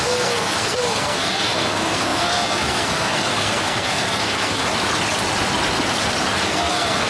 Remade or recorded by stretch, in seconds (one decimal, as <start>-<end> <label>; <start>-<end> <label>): 0.0-4.6 remade; 4.6-6.3 recorded; 6.3-7.1 remade